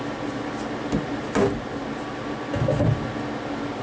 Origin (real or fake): real